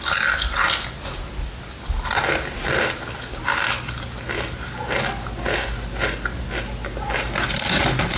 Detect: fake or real real